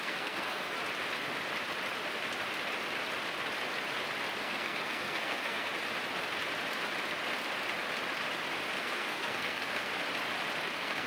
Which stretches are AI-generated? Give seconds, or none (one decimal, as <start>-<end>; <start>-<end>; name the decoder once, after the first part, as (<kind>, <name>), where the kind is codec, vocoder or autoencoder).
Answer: 0.0-0.8 (codec, SNAC); 4.4-5.7; 8.8-9.9; 10.6-11.1